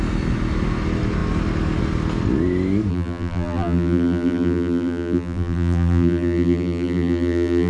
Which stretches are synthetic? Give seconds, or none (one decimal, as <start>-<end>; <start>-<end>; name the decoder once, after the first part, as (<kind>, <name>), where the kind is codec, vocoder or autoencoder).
2.9-7.7 (vocoder, BigVGAN v2)